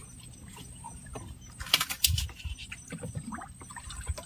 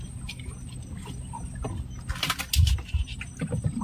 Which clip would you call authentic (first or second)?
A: second